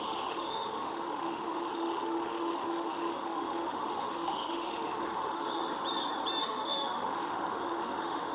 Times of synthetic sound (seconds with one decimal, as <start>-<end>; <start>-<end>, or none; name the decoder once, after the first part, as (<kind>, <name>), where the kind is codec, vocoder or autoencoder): 0.0-5.6 (autoencoder, DAC-VAE); 6.4-8.3